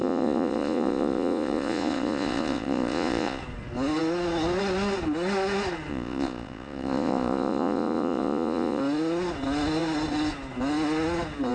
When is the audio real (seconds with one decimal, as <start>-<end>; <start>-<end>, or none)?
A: 3.4-5.9; 8.8-11.5